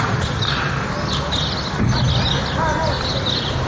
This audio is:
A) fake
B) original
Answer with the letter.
B